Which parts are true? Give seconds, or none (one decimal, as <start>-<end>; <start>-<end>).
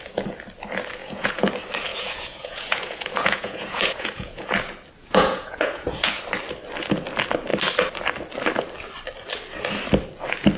0.0-1.0; 1.5-1.9; 4.5-5.0; 6.2-10.6